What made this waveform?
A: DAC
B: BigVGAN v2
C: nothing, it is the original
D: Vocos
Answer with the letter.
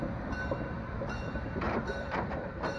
B